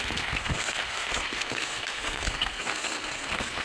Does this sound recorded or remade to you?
remade